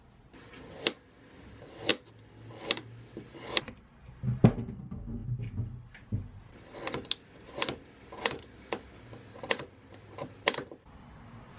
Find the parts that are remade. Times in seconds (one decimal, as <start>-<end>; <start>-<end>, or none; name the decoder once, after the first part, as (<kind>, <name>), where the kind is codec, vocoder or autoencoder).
none